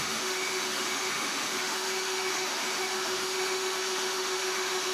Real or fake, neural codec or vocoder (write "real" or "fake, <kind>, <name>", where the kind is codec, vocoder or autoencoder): fake, autoencoder, DAC-VAE